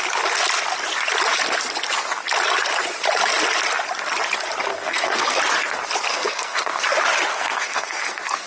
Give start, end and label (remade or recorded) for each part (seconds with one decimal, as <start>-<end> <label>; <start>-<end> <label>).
0.0-4.7 recorded; 4.7-5.4 remade; 5.4-6.1 recorded; 6.1-6.8 remade; 6.8-7.3 recorded; 7.3-8.5 remade